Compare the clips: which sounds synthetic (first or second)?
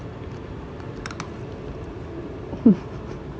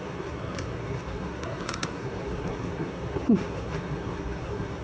second